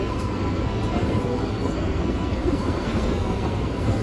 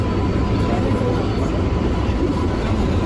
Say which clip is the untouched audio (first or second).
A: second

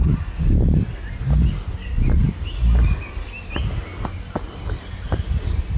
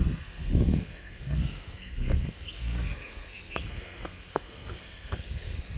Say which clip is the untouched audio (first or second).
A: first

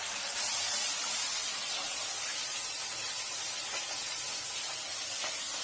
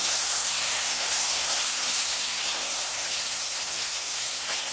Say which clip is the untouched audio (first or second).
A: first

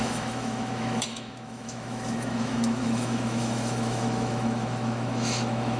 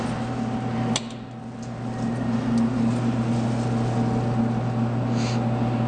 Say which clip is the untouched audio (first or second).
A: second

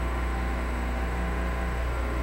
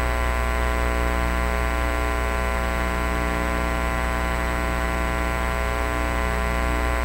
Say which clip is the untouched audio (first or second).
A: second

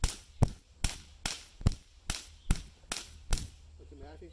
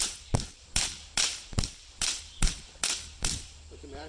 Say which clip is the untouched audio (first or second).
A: first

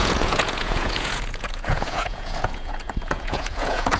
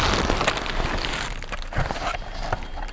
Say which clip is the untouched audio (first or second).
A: second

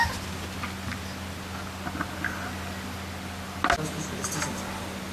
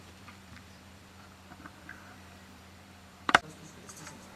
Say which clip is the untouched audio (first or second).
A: first